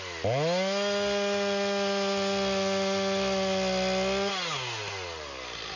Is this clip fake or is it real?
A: real